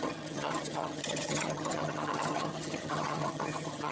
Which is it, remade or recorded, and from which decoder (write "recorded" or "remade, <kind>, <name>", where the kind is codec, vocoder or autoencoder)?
remade, vocoder, HiFi-GAN